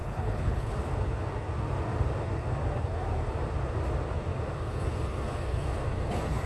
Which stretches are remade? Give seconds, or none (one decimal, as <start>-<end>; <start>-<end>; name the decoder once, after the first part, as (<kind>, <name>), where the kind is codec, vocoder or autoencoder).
0.0-0.7 (codec, HILCodec)